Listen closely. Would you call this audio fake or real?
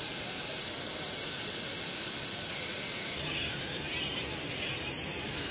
fake